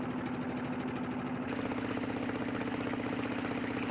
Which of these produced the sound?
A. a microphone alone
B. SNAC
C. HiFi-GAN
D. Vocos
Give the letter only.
A